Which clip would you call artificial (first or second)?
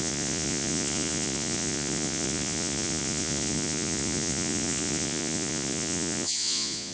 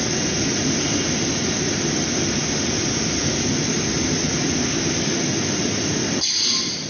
first